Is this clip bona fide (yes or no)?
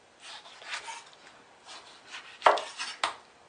yes